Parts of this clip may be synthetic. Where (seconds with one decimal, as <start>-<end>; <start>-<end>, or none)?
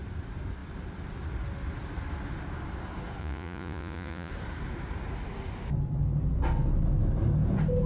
3.2-4.3